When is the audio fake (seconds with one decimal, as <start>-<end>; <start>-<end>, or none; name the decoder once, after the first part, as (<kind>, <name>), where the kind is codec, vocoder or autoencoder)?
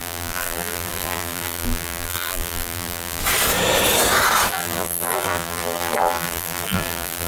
0.0-3.2 (vocoder, BigVGAN v2); 4.5-7.3